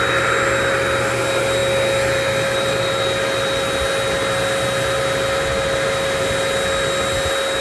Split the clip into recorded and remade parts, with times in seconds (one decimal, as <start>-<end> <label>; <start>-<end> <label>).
0.0-7.6 recorded